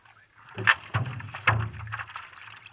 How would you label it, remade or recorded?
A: recorded